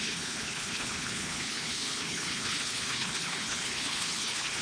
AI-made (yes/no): yes